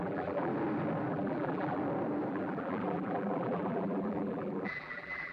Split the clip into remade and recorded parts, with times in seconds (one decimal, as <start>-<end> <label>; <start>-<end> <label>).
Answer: 0.0-0.5 remade; 0.5-1.1 recorded; 1.1-1.8 remade; 1.8-2.3 recorded; 2.3-5.3 remade